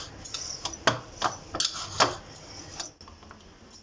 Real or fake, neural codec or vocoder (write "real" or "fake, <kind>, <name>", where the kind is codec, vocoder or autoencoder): real